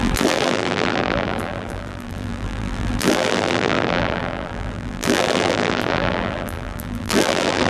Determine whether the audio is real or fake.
fake